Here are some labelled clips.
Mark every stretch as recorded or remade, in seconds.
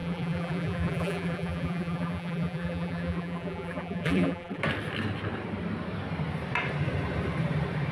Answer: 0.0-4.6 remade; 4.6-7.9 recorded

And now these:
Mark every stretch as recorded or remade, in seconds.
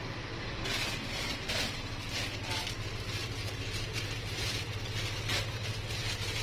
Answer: 0.0-3.2 recorded; 3.2-4.8 remade; 4.8-5.7 recorded; 5.7-6.4 remade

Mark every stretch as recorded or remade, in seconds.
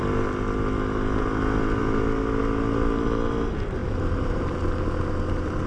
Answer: 0.0-3.8 recorded; 3.8-4.5 remade; 4.5-5.7 recorded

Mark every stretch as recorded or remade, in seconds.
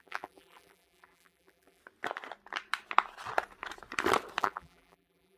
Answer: 0.0-1.8 remade; 1.8-4.4 recorded; 4.4-5.4 remade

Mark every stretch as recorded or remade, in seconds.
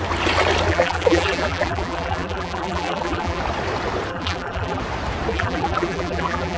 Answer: 0.0-0.7 recorded; 0.7-3.4 remade; 3.4-4.1 recorded; 4.1-4.8 remade; 4.8-5.3 recorded; 5.3-6.6 remade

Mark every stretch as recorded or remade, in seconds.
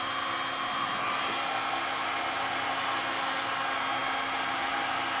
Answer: 0.0-5.2 recorded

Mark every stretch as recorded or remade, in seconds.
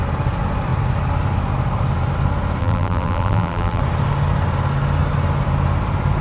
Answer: 0.0-2.6 recorded; 2.6-3.8 remade; 3.8-6.2 recorded